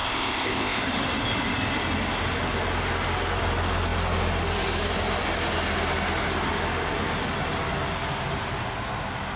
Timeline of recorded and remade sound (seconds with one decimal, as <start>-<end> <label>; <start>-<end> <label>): 0.0-0.8 remade; 0.8-9.4 recorded